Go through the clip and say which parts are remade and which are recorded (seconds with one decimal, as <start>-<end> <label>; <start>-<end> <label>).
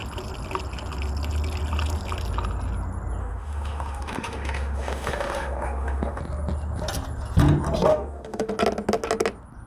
0.0-3.2 recorded; 3.2-6.2 remade; 6.2-7.9 recorded; 7.9-8.5 remade; 8.5-9.7 recorded